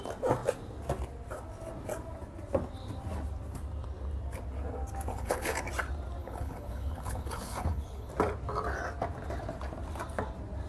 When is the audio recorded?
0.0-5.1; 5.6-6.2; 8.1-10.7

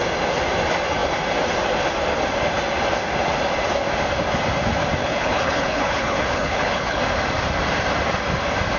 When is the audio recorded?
0.0-5.0; 7.0-8.8

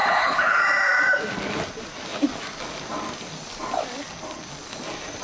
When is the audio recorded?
0.6-5.2

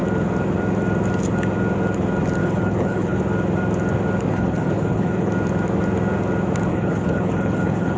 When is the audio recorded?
0.0-2.4; 3.2-4.3; 5.3-6.7

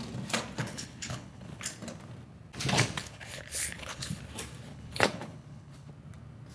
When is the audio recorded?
0.0-0.6; 1.6-3.0; 4.2-4.7; 5.9-6.5